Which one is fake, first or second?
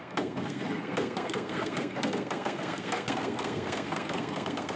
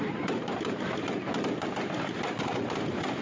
first